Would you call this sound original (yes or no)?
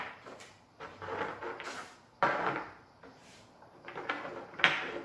no